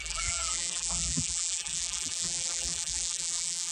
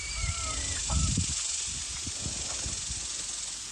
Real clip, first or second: second